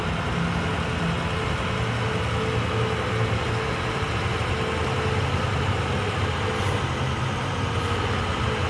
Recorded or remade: recorded